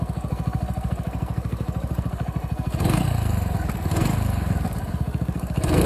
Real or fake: fake